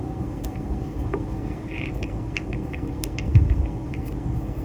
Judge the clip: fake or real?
fake